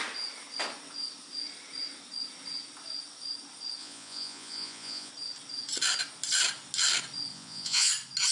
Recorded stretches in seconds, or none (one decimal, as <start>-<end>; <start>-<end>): 0.0-3.8; 5.1-7.3; 7.9-8.3